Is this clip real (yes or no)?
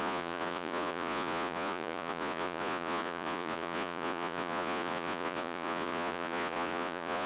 no